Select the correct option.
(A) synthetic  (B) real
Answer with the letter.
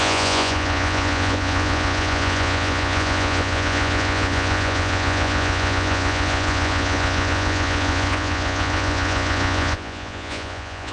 A